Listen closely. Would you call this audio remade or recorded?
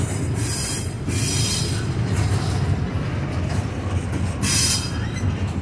recorded